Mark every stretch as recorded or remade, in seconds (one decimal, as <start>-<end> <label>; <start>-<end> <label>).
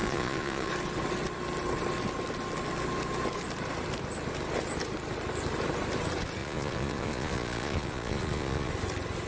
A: 0.0-0.7 remade; 0.7-6.4 recorded; 6.4-8.7 remade; 8.7-9.3 recorded